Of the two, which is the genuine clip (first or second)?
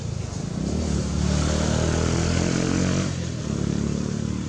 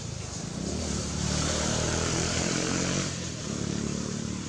first